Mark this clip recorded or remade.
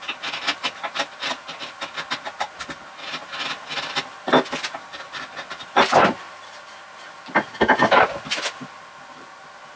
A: recorded